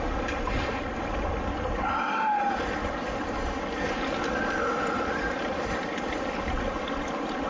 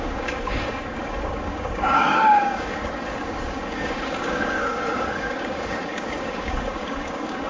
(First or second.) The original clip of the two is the first